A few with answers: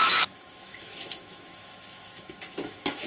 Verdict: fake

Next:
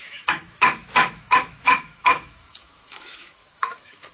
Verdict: fake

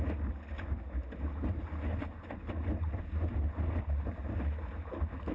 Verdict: real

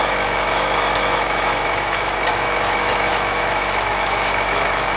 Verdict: fake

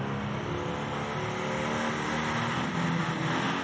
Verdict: real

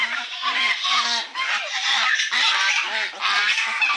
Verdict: real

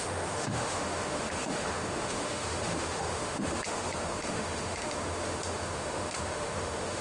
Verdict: fake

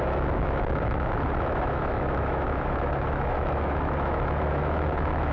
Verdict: fake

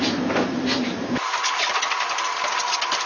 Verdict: real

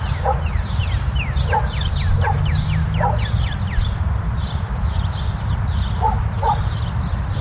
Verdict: real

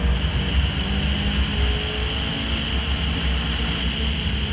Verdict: real